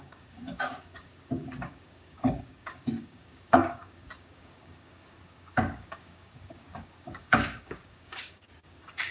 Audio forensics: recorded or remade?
remade